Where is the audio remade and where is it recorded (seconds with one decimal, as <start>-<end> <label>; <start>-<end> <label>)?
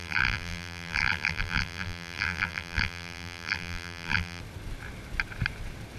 0.0-4.4 remade; 4.4-6.0 recorded